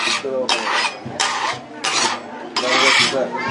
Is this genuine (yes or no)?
yes